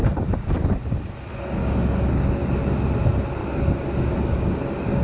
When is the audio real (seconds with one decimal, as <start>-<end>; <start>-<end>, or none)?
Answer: 0.5-1.6; 2.4-3.4; 4.6-5.0